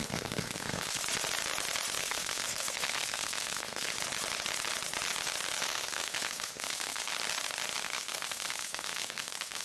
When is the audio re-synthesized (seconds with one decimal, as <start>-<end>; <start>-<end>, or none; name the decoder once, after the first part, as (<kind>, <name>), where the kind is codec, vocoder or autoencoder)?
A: 0.0-1.0 (codec, SNAC); 2.0-3.9; 5.6-7.1; 7.8-9.6